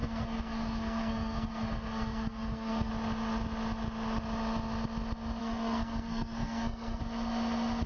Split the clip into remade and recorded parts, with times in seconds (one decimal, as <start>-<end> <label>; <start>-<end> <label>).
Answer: 0.0-2.9 remade; 2.9-5.4 recorded; 5.4-7.0 remade; 7.0-7.9 recorded